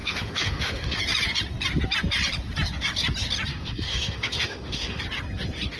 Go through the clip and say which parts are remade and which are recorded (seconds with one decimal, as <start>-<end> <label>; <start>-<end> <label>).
0.0-1.0 remade; 1.0-3.5 recorded; 3.5-5.0 remade; 5.0-5.8 recorded